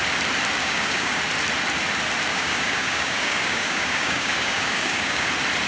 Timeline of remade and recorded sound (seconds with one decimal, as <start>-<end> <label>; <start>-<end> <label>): 0.0-0.6 recorded; 0.6-1.2 remade; 1.2-2.3 recorded; 2.3-5.3 remade; 5.3-5.7 recorded